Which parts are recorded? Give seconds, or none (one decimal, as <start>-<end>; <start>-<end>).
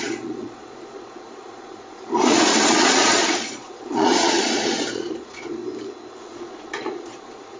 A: 5.6-6.2